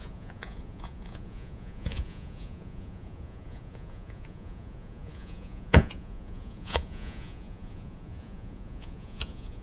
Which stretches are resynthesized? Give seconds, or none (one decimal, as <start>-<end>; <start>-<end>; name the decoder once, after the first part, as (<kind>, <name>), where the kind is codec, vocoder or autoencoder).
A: 0.0-9.6 (vocoder, Vocos)